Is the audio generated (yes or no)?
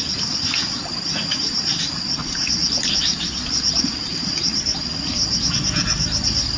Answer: no